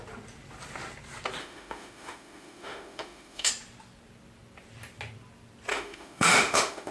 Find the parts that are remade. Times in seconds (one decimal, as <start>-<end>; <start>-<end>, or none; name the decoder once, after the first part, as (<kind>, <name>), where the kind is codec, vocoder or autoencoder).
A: 1.4-3.5 (autoencoder, DAC-VAE); 5.7-6.9